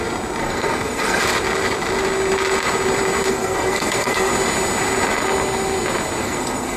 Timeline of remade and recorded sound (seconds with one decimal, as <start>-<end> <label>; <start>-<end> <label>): 0.0-0.4 recorded; 0.4-1.2 remade; 1.2-3.3 recorded; 3.3-4.3 remade; 4.3-6.2 recorded; 6.2-6.8 remade